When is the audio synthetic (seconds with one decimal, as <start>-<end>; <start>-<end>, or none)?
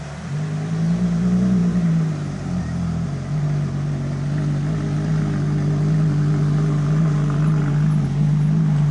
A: 1.6-2.6